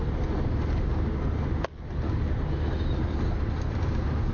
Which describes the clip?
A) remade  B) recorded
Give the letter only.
B